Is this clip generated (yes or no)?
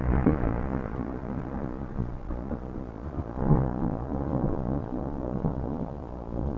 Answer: yes